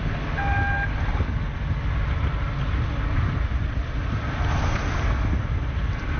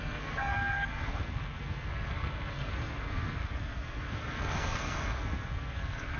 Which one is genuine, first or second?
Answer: first